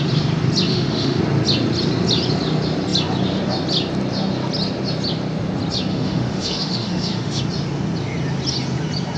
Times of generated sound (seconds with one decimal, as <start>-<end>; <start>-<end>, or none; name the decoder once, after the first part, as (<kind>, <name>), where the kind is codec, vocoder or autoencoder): 0.7-1.2 (autoencoder, DAC-VAE); 5.9-7.4